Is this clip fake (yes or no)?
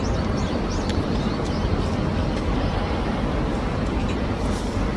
no